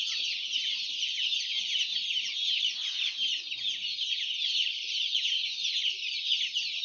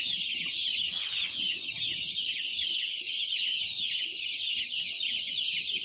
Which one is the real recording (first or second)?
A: first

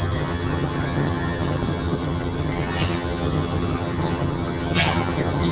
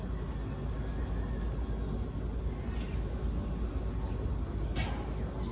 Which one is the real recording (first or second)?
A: second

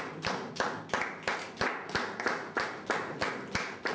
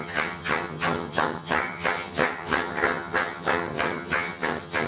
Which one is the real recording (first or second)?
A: first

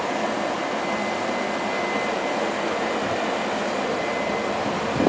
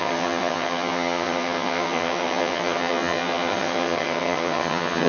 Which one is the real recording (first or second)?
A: first